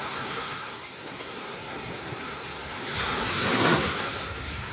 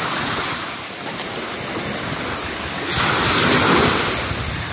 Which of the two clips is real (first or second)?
second